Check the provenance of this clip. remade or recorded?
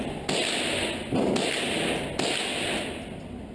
recorded